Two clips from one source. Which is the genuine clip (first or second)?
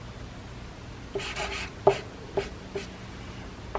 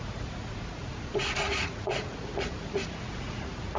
first